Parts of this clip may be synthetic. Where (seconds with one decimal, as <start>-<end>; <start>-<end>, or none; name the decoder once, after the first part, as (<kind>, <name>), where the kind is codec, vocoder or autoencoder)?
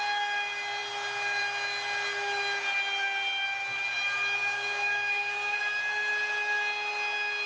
4.4-5.6 (codec, DAC)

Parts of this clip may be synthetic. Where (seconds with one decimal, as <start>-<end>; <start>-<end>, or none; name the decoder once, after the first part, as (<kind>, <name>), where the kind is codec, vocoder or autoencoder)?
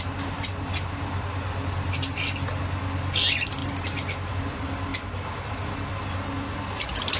none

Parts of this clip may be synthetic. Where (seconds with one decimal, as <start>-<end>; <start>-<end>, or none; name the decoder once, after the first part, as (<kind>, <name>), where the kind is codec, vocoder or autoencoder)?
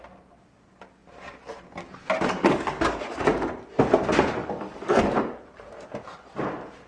2.4-3.5 (codec, DAC); 4.4-5.4